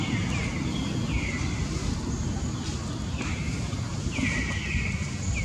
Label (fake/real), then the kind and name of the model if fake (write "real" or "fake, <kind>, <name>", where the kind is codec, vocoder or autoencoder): real